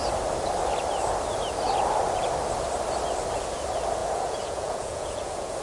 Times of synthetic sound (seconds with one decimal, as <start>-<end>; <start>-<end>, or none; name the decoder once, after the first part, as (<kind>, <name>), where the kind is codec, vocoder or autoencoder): 4.0-5.6 (vocoder, Vocos)